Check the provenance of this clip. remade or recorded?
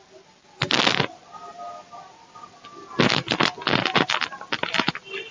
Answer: recorded